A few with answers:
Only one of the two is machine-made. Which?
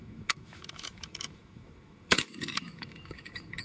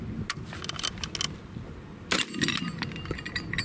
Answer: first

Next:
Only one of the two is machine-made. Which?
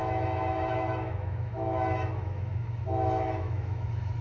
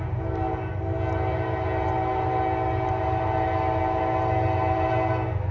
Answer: first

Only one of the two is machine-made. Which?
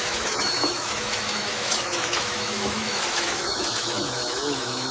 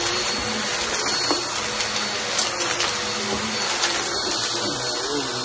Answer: first